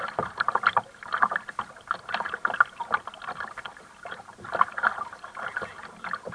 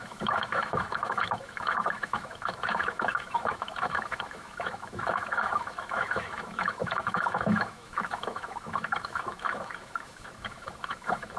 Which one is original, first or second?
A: first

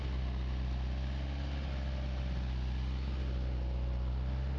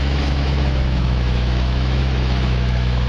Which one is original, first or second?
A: first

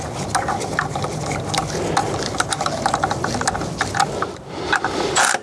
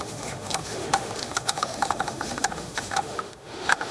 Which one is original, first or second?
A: first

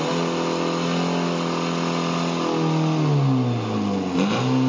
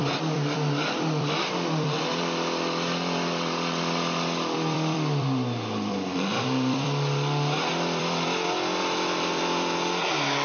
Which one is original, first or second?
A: first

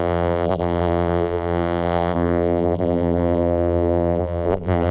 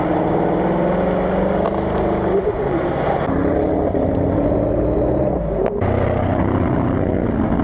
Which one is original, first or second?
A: second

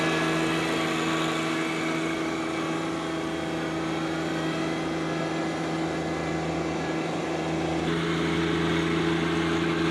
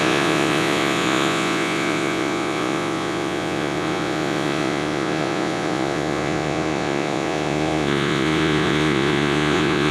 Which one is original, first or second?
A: first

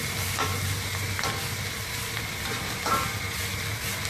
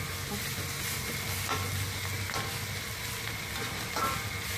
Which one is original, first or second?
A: second